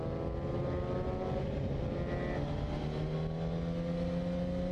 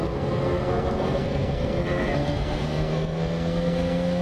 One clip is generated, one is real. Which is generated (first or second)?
second